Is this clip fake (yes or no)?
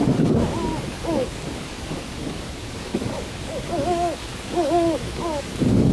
yes